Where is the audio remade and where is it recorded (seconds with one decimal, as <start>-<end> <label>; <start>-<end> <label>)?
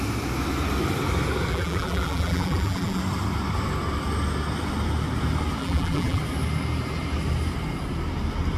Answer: 0.0-1.5 recorded; 1.5-3.0 remade; 3.0-5.6 recorded; 5.6-6.2 remade; 6.2-8.6 recorded